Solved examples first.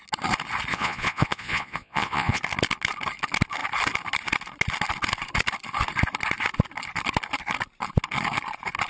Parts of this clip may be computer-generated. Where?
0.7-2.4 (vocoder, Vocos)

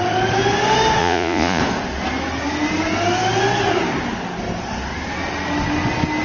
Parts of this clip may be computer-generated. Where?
1.0-1.6 (vocoder, Vocos)

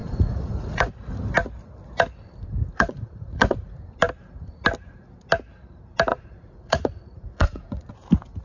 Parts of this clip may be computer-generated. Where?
0.0-0.9 (vocoder, Vocos); 2.6-3.8; 6.1-7.9

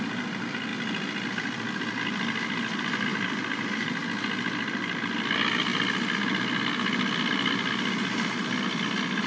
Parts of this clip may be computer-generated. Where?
none